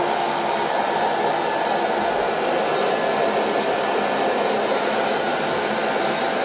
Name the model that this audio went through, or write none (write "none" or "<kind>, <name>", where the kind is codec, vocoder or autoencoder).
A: none